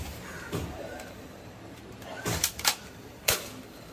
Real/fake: fake